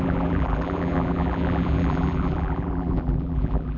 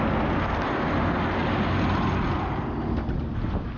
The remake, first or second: first